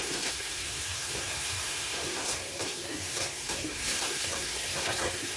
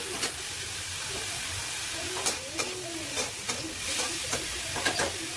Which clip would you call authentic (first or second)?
second